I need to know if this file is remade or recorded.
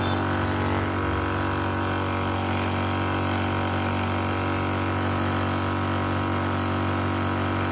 recorded